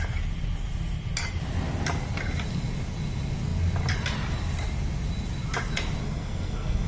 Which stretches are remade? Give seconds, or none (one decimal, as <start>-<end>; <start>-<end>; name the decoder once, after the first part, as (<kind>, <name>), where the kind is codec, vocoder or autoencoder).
6.0-6.9 (codec, SNAC)